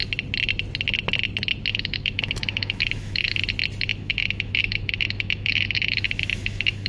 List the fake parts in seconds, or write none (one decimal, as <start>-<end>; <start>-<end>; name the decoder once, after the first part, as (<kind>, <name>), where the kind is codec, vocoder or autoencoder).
1.7-3.4 (autoencoder, DAC-VAE); 3.9-6.9